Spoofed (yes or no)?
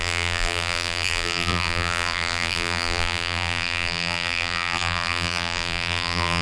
yes